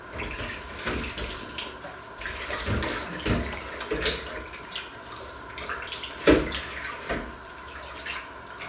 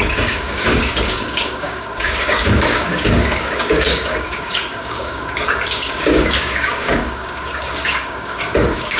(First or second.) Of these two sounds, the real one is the first